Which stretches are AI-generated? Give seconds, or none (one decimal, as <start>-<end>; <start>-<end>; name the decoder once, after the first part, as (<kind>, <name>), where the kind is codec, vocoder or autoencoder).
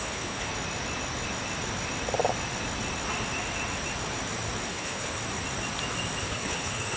0.0-0.5 (codec, HILCodec); 4.7-5.2; 6.2-7.0